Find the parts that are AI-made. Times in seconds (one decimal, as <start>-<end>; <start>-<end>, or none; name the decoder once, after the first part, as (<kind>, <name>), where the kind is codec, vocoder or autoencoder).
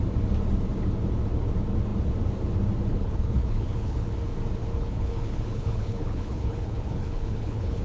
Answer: 2.9-4.1 (codec, HILCodec); 4.6-7.8